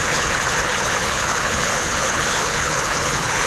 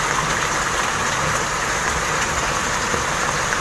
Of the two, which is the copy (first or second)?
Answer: first